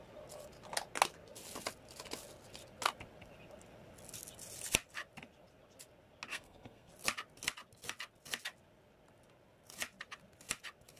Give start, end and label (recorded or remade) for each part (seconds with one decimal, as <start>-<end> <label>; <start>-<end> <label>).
0.0-6.3 recorded; 6.3-6.9 remade; 6.9-11.0 recorded